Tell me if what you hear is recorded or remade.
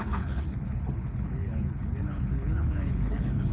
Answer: remade